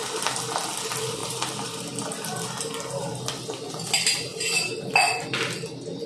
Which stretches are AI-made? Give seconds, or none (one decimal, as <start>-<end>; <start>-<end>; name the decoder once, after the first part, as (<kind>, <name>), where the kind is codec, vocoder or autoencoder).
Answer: none